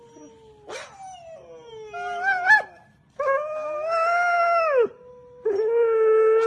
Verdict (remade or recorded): recorded